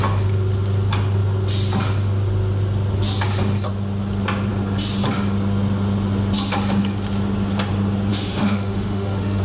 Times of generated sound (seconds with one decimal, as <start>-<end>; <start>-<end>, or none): 8.1-9.4